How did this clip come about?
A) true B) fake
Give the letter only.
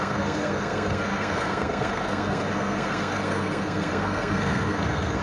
B